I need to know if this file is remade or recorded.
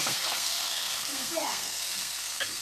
remade